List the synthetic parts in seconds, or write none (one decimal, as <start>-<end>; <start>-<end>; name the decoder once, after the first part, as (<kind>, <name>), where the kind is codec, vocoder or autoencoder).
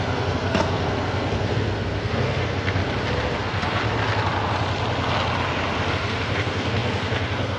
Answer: 0.0-2.8 (codec, SNAC); 3.4-3.8; 5.9-7.6